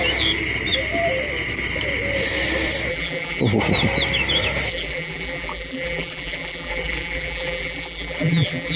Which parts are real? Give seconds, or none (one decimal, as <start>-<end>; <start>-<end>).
0.0-2.9; 3.4-4.7